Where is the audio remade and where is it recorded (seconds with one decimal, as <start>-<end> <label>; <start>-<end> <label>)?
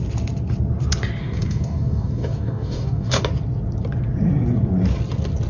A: 0.0-1.2 recorded; 1.2-3.2 remade; 3.2-5.5 recorded